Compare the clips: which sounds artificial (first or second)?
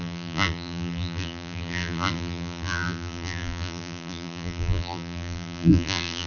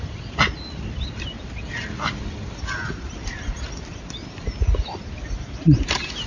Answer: first